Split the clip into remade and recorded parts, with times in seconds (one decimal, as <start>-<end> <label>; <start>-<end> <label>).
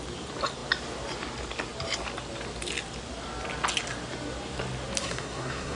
0.0-5.0 recorded; 5.0-5.8 remade